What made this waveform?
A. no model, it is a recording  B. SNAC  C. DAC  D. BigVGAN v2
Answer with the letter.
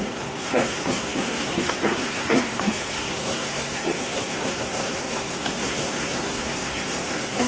B